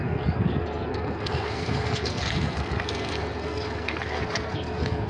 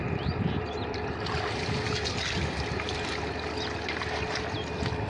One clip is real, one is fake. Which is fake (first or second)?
first